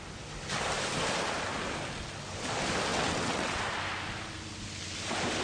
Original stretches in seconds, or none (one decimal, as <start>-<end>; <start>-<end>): 0.0-2.9; 3.6-5.4